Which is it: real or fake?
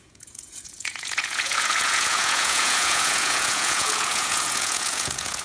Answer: fake